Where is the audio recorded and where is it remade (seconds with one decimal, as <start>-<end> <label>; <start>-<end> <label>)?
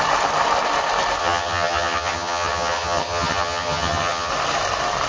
0.0-1.2 recorded; 1.2-4.3 remade; 4.3-5.1 recorded